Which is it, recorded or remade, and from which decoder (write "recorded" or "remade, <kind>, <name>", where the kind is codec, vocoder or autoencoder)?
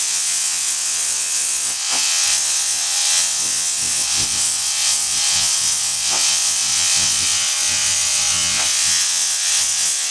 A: remade, vocoder, WaveNeXt